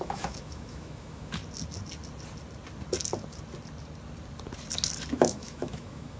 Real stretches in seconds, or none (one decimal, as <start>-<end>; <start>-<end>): 1.4-5.1